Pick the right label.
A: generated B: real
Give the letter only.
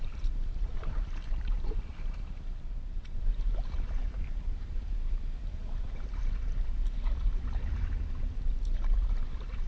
A